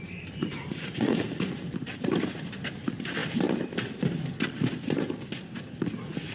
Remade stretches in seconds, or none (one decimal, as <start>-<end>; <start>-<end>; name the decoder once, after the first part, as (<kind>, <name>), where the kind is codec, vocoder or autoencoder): 0.4-1.6 (vocoder, Vocos)